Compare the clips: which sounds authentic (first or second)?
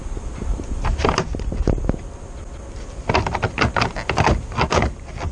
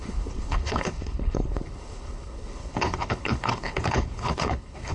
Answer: first